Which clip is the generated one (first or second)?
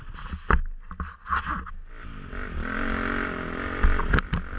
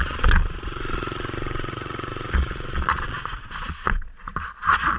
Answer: second